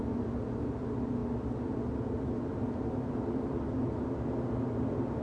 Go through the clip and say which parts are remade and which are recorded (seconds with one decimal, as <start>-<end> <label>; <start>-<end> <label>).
0.0-5.2 recorded